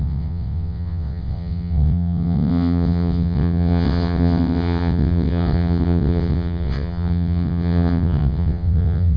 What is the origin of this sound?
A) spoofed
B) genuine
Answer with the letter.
A